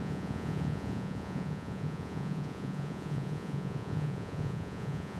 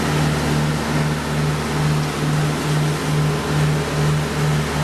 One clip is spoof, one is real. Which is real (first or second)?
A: second